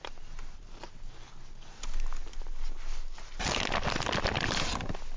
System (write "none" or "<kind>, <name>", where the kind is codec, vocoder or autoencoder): none